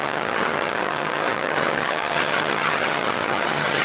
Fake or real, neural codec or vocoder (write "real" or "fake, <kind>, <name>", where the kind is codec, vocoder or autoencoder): fake, vocoder, HiFi-GAN